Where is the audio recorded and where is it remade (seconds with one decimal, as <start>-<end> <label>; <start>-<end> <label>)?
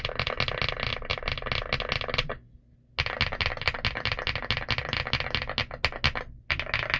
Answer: 0.0-7.0 recorded